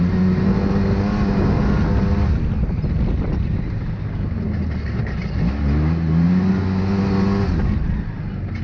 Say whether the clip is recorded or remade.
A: recorded